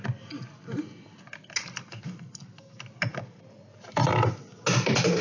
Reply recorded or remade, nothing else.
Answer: recorded